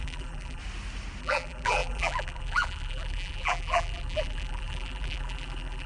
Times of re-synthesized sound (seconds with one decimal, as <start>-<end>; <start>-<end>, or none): 0.0-0.6; 1.2-5.9